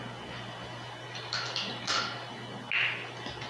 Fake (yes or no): no